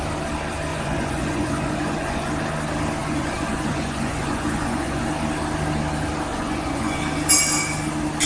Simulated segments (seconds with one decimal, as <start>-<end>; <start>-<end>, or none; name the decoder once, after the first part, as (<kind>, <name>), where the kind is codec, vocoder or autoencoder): 0.7-2.3 (vocoder, Vocos); 3.0-5.1; 6.3-7.0